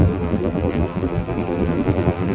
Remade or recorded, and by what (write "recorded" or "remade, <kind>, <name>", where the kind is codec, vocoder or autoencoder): remade, vocoder, BigVGAN v2